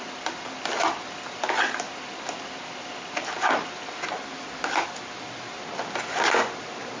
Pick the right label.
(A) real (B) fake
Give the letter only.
A